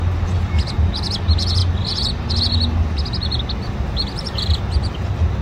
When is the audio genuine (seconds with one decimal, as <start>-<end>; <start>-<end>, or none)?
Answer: 0.0-5.4